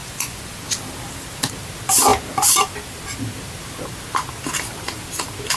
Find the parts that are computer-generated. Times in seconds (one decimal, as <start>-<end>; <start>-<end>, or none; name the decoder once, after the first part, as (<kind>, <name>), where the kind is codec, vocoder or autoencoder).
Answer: 0.0-0.5 (vocoder, Vocos)